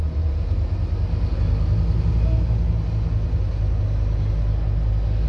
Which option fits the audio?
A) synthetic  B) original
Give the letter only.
B